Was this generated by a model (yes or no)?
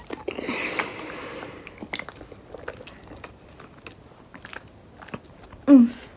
no